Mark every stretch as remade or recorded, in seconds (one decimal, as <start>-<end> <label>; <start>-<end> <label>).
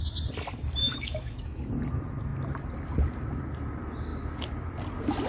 0.0-0.8 recorded; 0.8-1.7 remade; 1.7-5.3 recorded